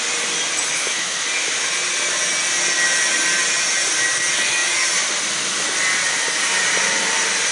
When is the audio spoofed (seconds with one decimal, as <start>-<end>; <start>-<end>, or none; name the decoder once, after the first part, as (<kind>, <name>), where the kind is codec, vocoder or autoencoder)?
0.7-1.2 (autoencoder, DAC-VAE)